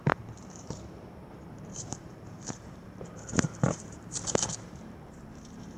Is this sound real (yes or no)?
no